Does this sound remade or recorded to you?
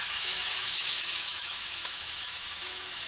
remade